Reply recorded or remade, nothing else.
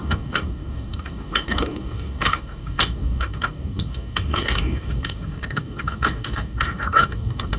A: remade